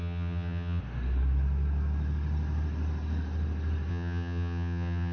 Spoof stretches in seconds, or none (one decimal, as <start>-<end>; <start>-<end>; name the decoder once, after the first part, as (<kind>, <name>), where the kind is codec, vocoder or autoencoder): 0.0-0.8 (vocoder, HiFi-GAN); 3.9-5.1